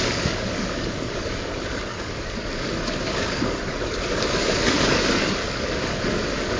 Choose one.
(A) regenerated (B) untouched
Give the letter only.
A